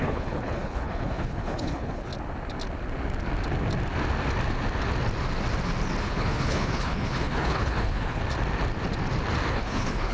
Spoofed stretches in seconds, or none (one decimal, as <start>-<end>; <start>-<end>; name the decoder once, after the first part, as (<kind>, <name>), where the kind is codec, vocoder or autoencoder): 0.0-2.1 (codec, HILCodec); 6.0-8.2; 9.5-10.1